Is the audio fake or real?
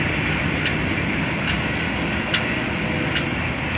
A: real